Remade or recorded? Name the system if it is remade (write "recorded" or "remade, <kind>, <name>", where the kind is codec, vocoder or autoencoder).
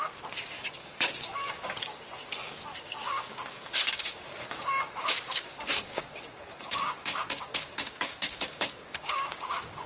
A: remade, codec, DAC